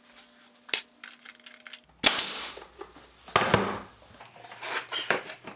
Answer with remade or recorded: recorded